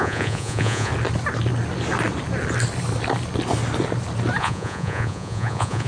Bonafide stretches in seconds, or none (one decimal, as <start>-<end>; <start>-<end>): 0.9-4.4